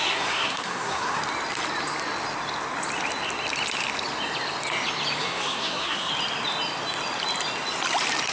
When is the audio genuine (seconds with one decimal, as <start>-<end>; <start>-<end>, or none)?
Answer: 1.2-5.2; 6.1-8.3